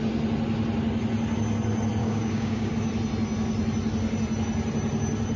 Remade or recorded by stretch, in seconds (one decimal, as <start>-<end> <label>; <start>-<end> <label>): 0.0-2.0 recorded; 2.0-2.7 remade; 2.7-5.4 recorded